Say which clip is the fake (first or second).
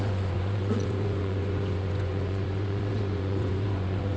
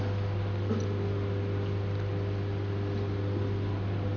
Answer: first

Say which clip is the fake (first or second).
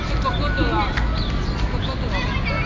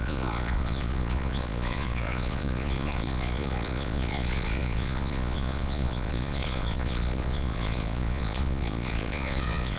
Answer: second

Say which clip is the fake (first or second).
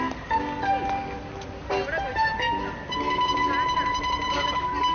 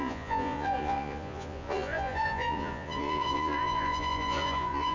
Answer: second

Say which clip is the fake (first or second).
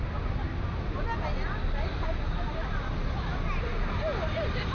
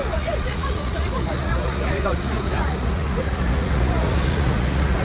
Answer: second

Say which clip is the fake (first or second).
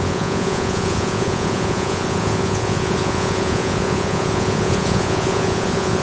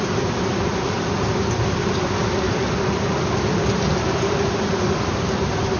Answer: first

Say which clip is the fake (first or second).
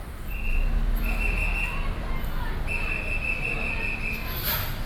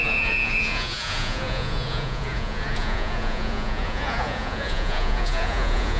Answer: second